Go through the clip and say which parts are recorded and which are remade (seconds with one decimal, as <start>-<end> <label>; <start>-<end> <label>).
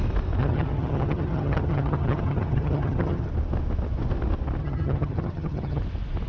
0.0-0.4 recorded; 0.4-3.3 remade; 3.3-4.6 recorded; 4.6-5.8 remade; 5.8-6.3 recorded